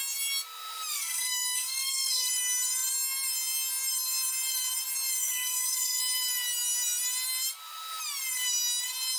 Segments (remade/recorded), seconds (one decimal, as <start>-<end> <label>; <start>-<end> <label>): 0.0-0.9 recorded; 0.9-2.3 remade; 2.3-5.2 recorded; 5.2-6.0 remade; 6.0-9.2 recorded